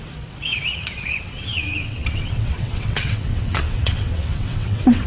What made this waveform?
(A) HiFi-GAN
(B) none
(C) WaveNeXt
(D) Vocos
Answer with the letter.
C